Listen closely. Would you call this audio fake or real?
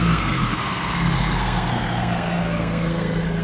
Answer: fake